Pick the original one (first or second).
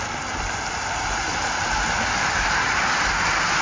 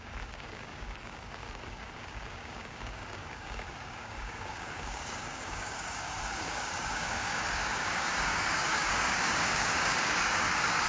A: first